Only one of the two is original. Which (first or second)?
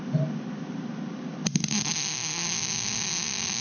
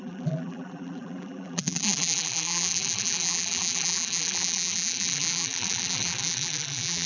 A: first